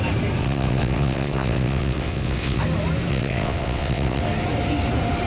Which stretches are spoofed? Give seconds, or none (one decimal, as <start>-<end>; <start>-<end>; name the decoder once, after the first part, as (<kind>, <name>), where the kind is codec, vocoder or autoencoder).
0.4-2.6 (vocoder, WaveNeXt); 3.1-4.2

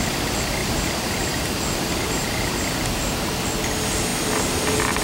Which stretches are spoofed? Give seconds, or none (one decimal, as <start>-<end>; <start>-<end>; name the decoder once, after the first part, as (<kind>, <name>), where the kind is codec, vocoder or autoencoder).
0.6-2.7 (vocoder, BigVGAN v2)

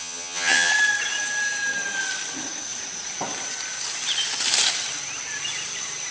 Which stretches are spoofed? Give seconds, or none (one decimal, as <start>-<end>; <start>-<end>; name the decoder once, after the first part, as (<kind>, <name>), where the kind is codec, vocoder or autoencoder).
0.0-0.7 (vocoder, HiFi-GAN)

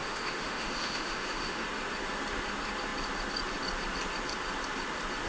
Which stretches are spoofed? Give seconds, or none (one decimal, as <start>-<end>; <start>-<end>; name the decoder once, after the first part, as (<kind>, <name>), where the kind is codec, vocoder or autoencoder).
0.0-1.6 (autoencoder, DAC-VAE)

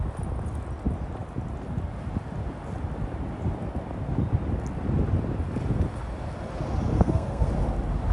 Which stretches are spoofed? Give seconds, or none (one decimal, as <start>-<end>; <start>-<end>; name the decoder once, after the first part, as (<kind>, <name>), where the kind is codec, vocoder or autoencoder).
6.9-7.5 (codec, SNAC)

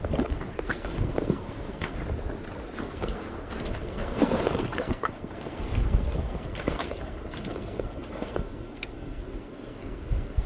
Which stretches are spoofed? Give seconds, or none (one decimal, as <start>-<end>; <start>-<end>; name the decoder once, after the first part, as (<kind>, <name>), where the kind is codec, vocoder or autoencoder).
0.0-2.0 (codec, SNAC); 2.8-10.5